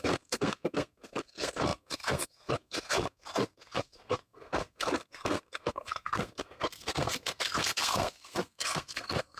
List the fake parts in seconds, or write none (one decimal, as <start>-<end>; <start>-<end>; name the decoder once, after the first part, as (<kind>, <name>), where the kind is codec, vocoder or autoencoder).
0.0-9.4 (codec, SNAC)